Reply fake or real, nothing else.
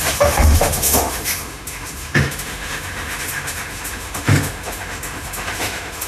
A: fake